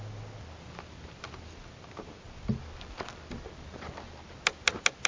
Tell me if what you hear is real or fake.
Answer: real